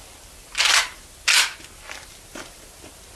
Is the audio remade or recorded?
recorded